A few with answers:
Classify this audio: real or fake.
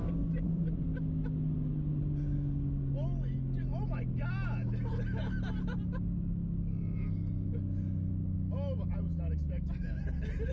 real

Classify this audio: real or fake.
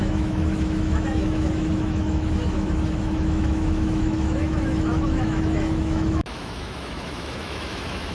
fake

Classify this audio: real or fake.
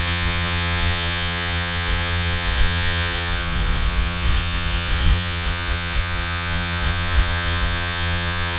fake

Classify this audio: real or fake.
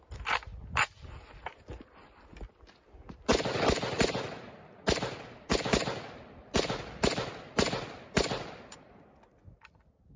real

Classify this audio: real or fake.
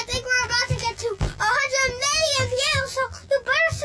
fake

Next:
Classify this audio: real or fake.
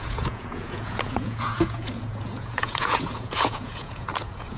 fake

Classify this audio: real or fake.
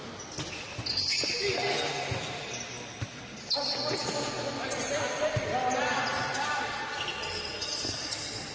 real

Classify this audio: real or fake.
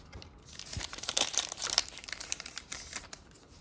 fake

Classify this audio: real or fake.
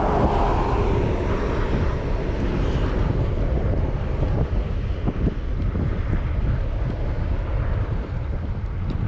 real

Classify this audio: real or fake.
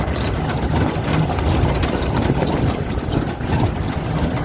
real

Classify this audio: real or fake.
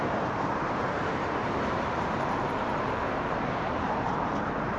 fake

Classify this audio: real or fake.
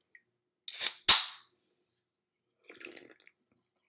real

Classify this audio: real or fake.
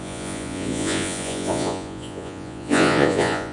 fake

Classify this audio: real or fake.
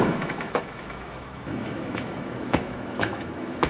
fake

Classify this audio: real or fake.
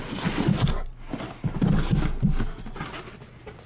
real